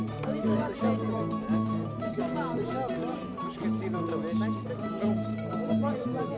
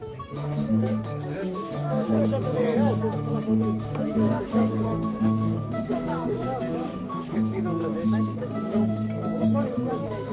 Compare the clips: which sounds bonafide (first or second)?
first